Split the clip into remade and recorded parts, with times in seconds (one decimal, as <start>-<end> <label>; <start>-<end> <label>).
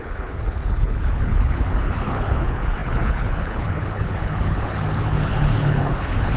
0.0-6.4 remade